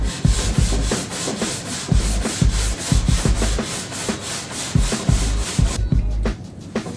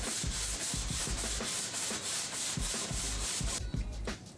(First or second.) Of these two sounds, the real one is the first